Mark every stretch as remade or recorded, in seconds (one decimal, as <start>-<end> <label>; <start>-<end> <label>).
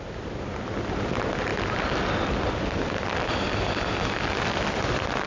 0.0-5.3 recorded